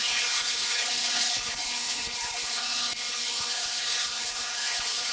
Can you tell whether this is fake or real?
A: fake